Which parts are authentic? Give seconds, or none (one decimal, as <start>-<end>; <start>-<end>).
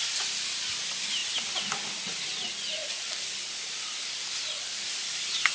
0.0-5.5